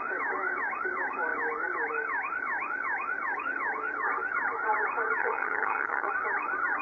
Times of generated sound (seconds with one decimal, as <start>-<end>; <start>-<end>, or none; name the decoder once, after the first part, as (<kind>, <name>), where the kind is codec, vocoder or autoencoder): 5.2-6.1 (vocoder, HiFi-GAN)

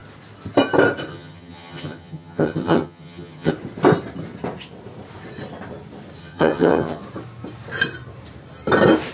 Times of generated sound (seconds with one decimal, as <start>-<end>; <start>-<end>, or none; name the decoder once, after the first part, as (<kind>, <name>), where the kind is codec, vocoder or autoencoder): 1.1-3.5 (vocoder, HiFi-GAN); 6.2-7.0

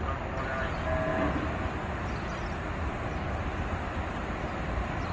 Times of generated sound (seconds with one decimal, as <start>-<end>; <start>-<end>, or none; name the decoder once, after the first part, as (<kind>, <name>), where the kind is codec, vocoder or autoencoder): none

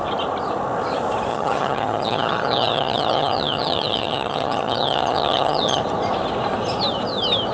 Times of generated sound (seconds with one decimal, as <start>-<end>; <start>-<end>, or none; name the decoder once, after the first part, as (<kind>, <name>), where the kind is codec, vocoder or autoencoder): 1.3-5.8 (vocoder, HiFi-GAN)

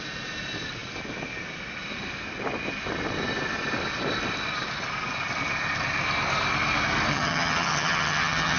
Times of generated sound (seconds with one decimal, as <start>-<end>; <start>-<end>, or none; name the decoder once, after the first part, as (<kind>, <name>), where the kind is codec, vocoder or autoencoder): 7.1-8.6 (vocoder, HiFi-GAN)